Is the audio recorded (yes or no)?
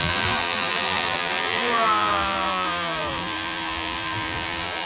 no